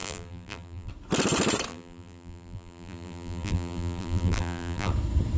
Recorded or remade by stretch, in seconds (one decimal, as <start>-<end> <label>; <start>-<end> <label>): 0.0-0.9 remade; 0.9-1.7 recorded; 1.7-4.9 remade; 4.9-5.4 recorded